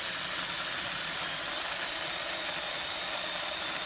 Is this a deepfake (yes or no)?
no